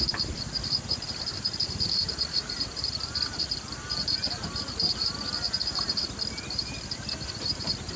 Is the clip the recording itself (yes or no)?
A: no